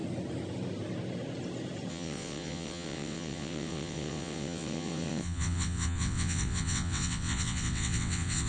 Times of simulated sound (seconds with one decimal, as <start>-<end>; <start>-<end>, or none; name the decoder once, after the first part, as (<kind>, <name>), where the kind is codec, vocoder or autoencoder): 1.9-8.5 (vocoder, WaveNeXt)